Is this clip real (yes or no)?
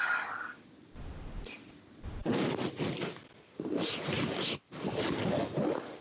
yes